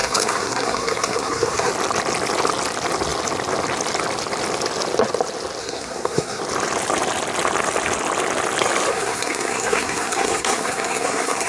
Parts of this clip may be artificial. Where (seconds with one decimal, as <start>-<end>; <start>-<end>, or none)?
0.0-1.7; 5.6-6.4; 8.9-11.5